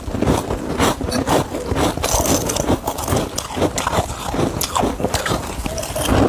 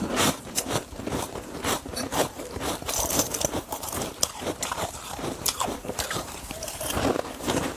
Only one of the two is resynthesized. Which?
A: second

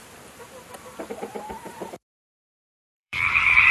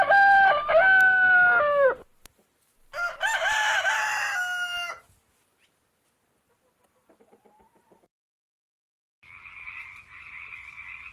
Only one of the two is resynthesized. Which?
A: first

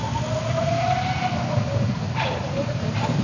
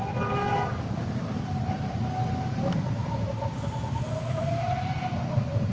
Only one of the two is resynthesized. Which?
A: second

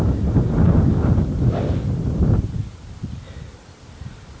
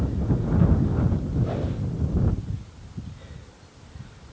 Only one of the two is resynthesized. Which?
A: first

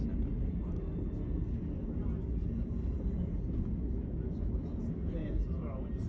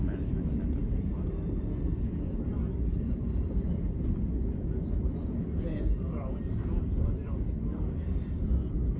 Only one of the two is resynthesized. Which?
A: second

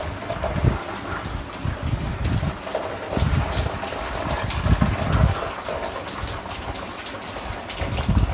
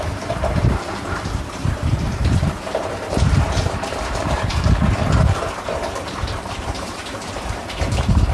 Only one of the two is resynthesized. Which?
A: second